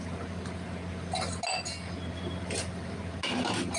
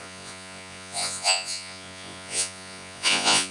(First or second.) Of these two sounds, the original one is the first